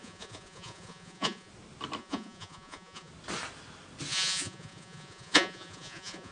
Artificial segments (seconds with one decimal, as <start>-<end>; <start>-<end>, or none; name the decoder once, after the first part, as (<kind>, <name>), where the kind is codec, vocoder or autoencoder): 0.0-1.5 (vocoder, Vocos); 2.0-3.1; 4.1-6.3